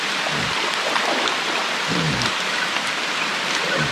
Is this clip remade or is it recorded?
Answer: recorded